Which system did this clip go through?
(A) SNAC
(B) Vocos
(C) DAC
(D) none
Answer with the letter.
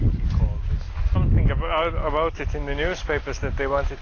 D